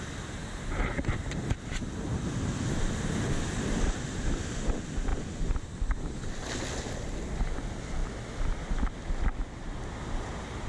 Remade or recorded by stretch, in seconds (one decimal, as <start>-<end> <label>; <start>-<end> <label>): 0.0-10.7 recorded